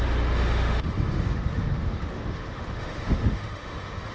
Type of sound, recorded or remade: remade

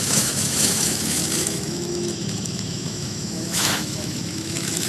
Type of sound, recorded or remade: remade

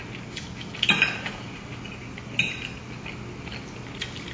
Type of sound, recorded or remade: recorded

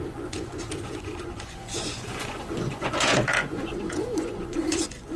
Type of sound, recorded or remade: remade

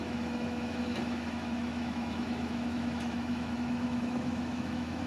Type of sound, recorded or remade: remade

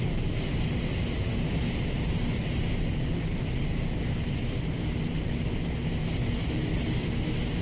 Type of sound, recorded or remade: recorded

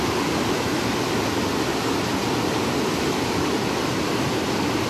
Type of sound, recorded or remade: recorded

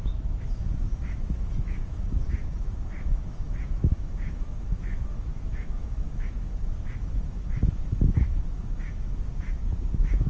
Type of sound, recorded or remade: remade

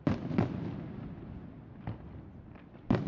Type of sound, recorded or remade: recorded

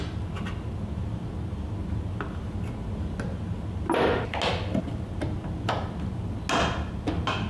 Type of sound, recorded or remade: recorded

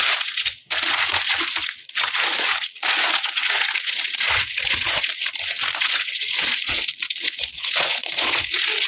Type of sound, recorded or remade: remade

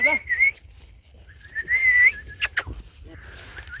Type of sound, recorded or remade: recorded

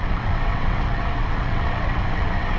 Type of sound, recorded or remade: remade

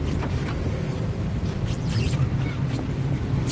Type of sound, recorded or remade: remade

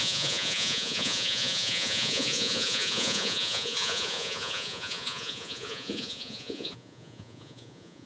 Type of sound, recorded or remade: remade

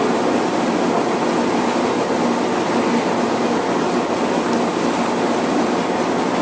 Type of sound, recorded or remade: recorded